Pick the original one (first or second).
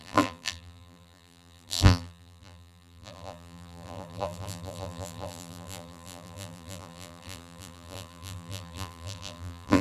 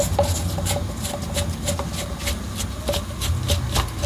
second